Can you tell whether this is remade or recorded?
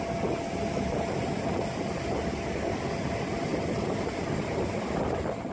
recorded